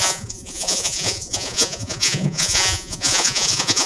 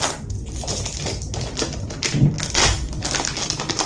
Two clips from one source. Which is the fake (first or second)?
first